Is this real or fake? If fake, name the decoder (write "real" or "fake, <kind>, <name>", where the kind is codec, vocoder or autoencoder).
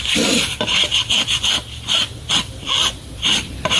real